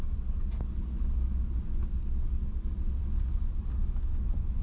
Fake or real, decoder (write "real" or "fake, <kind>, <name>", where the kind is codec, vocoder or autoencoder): real